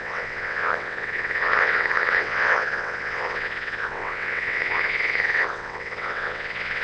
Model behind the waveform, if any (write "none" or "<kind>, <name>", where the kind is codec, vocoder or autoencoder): vocoder, WaveNeXt